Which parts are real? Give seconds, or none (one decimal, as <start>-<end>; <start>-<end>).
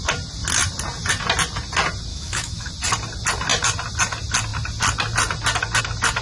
0.0-2.1; 2.7-6.2